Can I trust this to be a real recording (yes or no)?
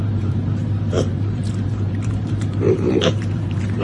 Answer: no